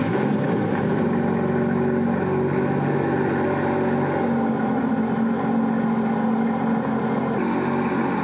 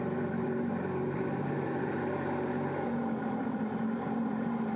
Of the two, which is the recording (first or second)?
first